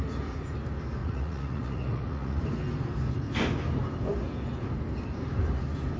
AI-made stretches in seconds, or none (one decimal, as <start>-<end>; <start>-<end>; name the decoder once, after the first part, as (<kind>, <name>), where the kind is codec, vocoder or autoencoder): 1.0-2.4 (vocoder, Vocos)